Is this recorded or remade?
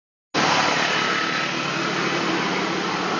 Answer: recorded